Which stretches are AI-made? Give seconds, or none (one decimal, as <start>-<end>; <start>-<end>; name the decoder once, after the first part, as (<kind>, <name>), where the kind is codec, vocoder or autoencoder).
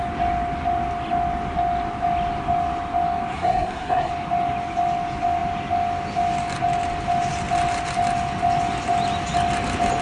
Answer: 3.3-4.1 (codec, SNAC)